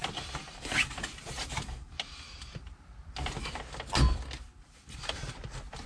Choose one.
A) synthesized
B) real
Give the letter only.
B